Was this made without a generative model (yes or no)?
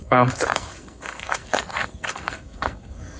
no